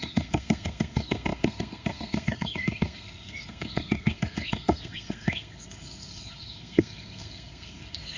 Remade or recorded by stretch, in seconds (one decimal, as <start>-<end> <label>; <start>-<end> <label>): 0.0-8.2 remade